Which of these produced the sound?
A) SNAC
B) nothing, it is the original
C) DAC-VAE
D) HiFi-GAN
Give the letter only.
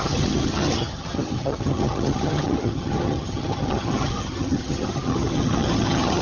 D